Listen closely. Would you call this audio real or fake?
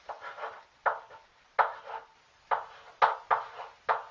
real